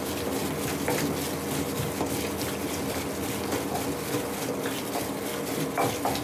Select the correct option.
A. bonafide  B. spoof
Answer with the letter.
A